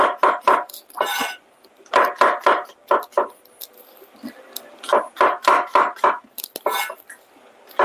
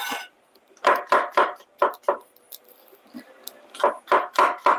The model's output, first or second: second